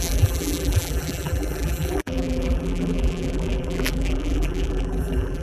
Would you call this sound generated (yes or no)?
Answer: yes